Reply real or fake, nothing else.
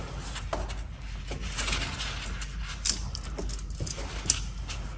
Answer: real